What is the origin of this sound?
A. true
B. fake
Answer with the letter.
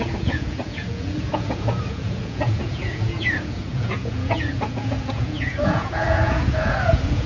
B